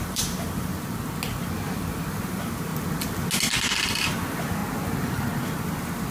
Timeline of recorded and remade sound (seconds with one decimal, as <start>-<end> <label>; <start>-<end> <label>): 0.0-0.7 remade; 0.7-2.1 recorded; 2.1-2.7 remade; 2.7-3.5 recorded; 3.5-4.6 remade; 4.6-6.1 recorded